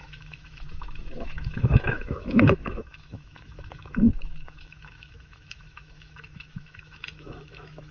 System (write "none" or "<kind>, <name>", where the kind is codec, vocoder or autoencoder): autoencoder, DAC-VAE